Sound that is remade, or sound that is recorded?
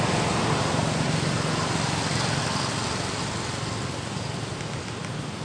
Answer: recorded